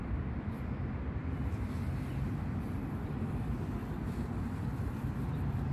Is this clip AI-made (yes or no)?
yes